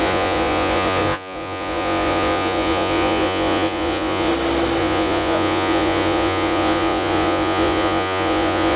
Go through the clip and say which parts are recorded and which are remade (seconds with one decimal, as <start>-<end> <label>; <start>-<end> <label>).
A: 0.0-4.3 remade; 4.3-4.8 recorded; 4.8-8.8 remade